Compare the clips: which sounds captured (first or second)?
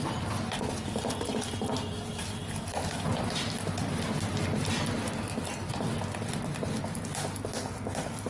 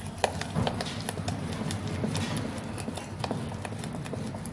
first